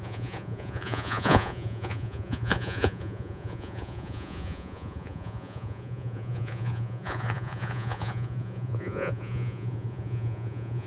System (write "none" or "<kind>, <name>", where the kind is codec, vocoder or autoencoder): vocoder, Vocos